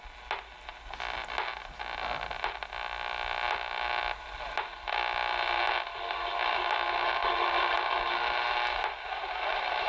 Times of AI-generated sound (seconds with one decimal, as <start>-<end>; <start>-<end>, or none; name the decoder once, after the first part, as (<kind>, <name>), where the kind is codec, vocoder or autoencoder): none